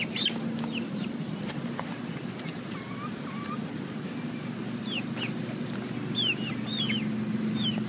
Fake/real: real